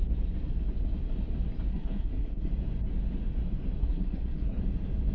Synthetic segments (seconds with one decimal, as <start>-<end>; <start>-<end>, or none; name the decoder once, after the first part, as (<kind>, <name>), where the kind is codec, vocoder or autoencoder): 1.7-2.5 (codec, SNAC); 3.8-4.6